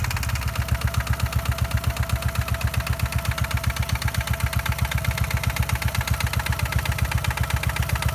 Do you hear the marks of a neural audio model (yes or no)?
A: no